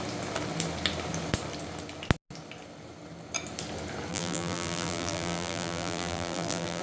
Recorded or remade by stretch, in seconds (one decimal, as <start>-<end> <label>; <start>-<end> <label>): 0.0-4.1 recorded; 4.1-6.8 remade

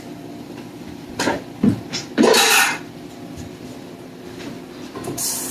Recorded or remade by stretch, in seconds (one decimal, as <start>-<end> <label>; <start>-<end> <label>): 0.0-5.5 remade

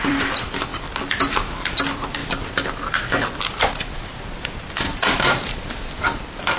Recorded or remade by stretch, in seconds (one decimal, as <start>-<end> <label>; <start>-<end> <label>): 0.0-0.7 remade; 0.7-1.8 recorded; 1.8-2.2 remade; 2.2-3.4 recorded; 3.4-6.6 remade

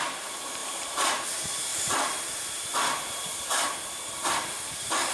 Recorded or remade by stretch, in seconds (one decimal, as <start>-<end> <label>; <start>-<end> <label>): 0.0-0.6 recorded; 0.6-1.1 remade; 1.1-1.7 recorded; 1.7-5.1 remade